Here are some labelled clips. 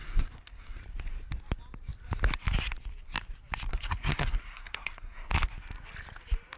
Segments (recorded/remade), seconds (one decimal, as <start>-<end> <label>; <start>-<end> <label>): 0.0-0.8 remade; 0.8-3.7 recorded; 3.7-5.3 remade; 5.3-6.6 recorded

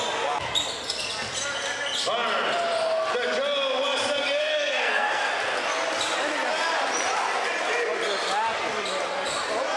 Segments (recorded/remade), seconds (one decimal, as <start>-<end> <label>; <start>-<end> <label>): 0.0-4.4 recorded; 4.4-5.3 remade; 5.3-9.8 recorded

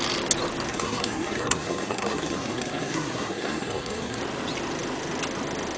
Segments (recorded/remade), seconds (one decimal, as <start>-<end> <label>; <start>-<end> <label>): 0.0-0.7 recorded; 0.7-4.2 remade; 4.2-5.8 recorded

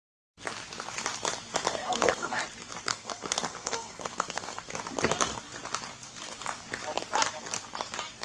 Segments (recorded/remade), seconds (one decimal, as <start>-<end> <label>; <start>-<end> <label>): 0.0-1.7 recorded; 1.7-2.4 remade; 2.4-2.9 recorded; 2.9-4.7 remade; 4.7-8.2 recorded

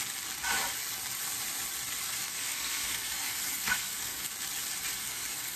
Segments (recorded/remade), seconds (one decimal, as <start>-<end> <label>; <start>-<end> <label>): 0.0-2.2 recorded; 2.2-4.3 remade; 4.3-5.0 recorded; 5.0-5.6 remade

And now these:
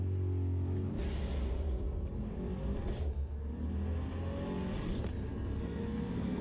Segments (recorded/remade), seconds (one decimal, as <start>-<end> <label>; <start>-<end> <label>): 0.0-5.3 recorded; 5.3-6.4 remade

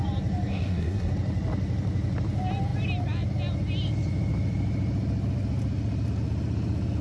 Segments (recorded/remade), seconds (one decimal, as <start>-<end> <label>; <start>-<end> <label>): 0.0-0.5 recorded; 0.5-1.1 remade; 1.1-7.0 recorded

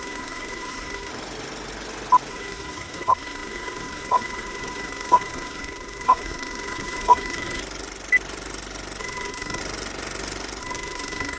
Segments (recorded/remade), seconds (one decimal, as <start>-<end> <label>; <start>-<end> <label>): 0.0-1.1 remade; 1.1-2.3 recorded; 2.3-7.6 remade; 7.6-9.0 recorded; 9.0-9.6 remade; 9.6-10.6 recorded; 10.6-11.4 remade